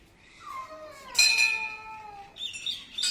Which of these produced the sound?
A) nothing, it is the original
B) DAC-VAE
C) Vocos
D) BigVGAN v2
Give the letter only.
A